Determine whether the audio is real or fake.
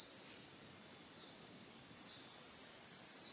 real